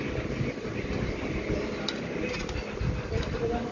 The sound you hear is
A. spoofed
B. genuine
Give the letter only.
B